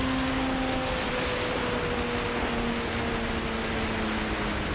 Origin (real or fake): real